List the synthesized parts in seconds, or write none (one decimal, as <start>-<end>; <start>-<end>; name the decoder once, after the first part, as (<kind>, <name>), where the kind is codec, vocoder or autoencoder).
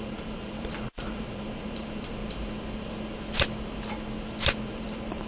0.0-2.2 (vocoder, BigVGAN v2); 4.7-5.3